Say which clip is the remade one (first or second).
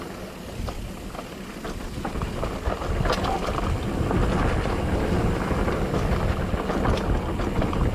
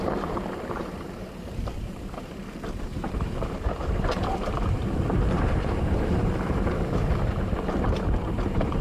second